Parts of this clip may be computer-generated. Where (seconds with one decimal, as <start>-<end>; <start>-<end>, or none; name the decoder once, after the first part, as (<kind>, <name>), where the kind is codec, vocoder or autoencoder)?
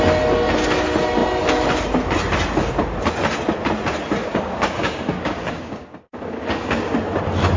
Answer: 4.2-6.9 (codec, DAC)